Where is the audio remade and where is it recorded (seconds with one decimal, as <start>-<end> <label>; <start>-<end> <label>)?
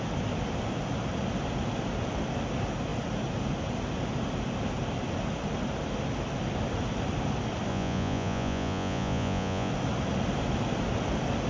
0.0-7.7 recorded; 7.7-9.7 remade; 9.7-11.5 recorded